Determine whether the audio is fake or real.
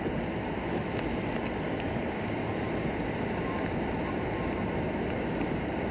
real